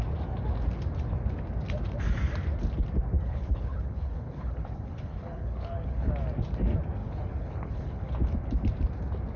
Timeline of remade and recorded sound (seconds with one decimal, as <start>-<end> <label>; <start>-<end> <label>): 0.0-3.2 recorded; 3.2-6.1 remade; 6.1-7.0 recorded; 7.0-8.1 remade; 8.1-9.4 recorded

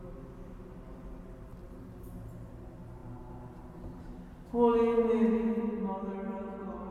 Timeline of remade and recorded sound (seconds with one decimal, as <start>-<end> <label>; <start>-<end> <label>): 0.0-6.9 recorded

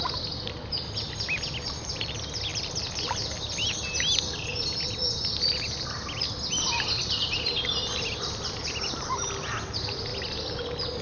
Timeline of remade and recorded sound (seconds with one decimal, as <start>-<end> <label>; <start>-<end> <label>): 0.0-11.0 recorded

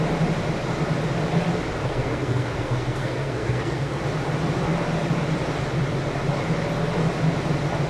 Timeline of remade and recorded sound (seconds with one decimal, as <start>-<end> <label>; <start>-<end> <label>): 0.0-1.8 recorded; 1.8-4.0 remade; 4.0-7.9 recorded